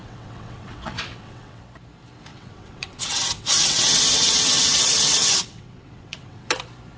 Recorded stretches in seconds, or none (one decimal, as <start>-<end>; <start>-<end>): 1.6-2.3; 6.5-7.0